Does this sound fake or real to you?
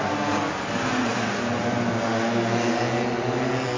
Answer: real